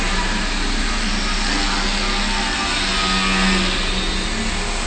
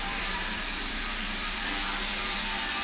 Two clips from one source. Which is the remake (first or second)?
second